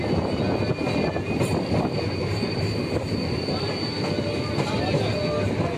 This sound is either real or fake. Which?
real